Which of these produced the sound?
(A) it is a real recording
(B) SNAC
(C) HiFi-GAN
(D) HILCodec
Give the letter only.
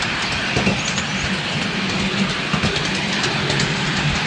A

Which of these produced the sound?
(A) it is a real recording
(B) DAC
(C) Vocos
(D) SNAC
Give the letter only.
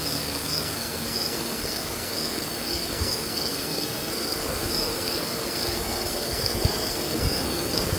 D